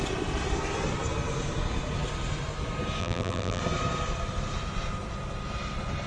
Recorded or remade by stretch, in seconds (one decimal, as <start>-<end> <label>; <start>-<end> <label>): 0.0-3.0 recorded; 3.0-3.6 remade; 3.6-6.1 recorded